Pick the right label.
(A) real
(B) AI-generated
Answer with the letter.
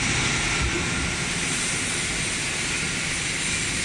A